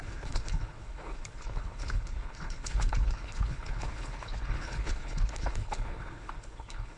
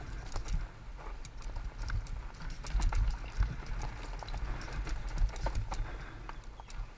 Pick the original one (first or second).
second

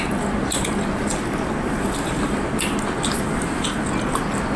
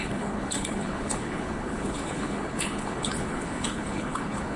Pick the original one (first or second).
first